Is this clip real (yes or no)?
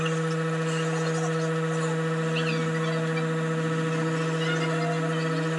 yes